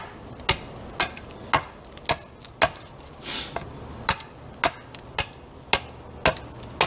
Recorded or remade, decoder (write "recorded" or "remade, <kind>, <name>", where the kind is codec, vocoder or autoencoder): recorded